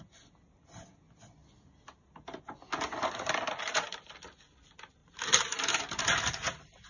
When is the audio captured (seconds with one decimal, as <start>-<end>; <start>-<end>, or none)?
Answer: 0.0-5.0